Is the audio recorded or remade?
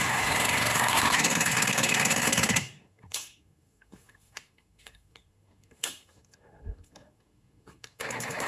remade